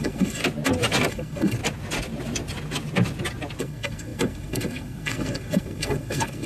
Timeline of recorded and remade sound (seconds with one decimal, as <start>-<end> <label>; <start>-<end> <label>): 0.0-0.4 remade; 0.4-1.1 recorded; 1.1-1.6 remade; 1.6-3.6 recorded; 3.6-6.5 remade